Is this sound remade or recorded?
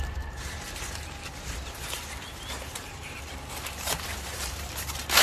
remade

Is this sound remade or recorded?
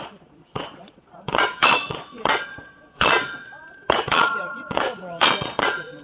remade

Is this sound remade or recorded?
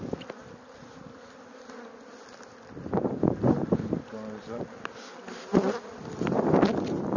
recorded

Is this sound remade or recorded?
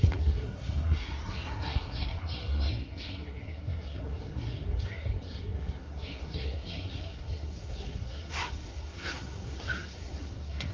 remade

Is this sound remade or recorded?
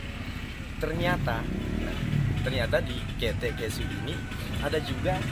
recorded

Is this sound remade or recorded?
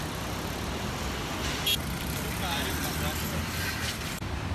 remade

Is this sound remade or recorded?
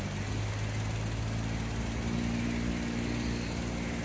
recorded